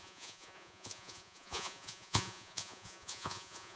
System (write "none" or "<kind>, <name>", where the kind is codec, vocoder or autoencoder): vocoder, Vocos